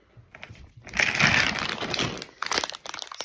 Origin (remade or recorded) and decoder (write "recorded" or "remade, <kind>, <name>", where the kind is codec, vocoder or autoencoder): recorded